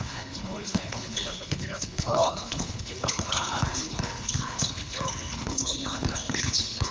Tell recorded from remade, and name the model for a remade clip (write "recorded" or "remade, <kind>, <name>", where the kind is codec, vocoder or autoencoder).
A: remade, codec, HILCodec